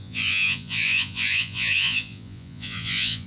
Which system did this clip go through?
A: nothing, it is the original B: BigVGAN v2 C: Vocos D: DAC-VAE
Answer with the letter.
C